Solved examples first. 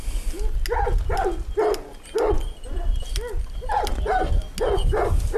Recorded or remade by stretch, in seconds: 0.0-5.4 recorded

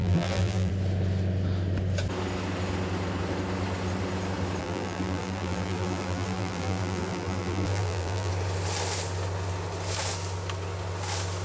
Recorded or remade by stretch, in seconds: 0.0-0.7 remade; 0.7-4.6 recorded; 4.6-8.3 remade; 8.3-11.4 recorded

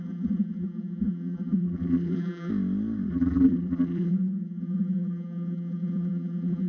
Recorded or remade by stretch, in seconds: 0.0-2.5 remade; 2.5-3.1 recorded; 3.1-6.7 remade

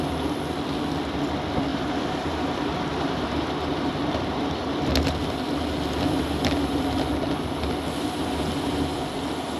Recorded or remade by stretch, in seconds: 0.0-1.7 recorded; 1.7-4.7 remade; 4.7-9.6 recorded

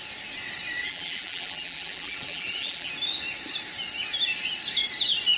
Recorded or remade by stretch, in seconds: 0.0-0.8 recorded; 0.8-2.9 remade; 2.9-5.4 recorded